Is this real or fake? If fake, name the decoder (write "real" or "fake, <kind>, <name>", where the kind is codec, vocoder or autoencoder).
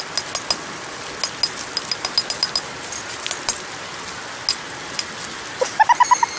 real